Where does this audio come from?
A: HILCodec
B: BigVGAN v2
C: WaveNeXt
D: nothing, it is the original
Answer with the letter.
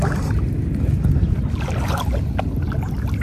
D